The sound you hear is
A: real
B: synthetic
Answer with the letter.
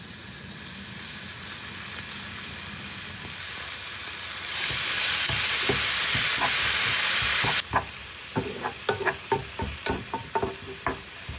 A